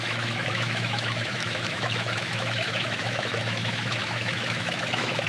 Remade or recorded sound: remade